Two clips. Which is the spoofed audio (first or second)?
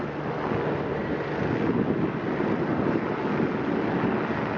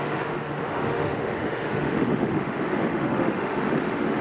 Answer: second